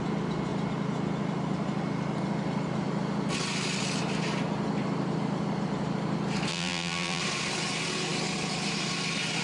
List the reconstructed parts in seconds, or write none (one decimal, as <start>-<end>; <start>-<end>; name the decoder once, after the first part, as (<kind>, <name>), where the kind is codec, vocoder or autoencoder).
6.5-7.2 (vocoder, BigVGAN v2)